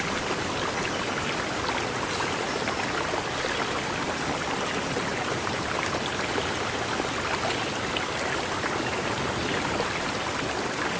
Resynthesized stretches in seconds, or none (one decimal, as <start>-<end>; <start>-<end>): 5.1-5.9; 9.4-9.9